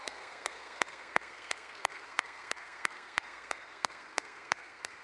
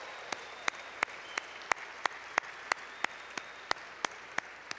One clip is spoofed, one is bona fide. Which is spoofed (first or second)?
first